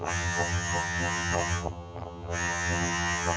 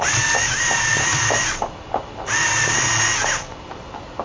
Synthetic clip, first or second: first